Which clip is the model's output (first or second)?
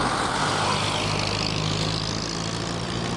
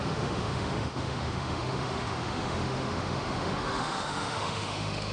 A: second